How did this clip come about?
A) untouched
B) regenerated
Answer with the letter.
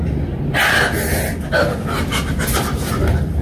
A